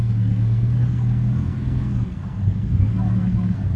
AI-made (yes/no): yes